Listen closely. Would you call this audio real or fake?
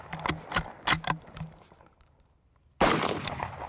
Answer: real